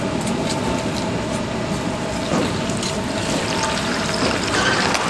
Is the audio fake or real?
real